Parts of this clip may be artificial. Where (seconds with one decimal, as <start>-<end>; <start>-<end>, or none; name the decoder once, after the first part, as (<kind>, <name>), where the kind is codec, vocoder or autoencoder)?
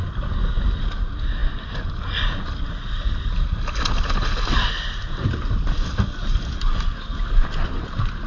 none